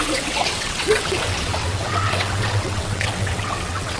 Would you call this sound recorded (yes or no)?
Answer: no